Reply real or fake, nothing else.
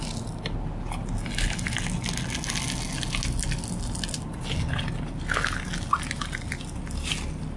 real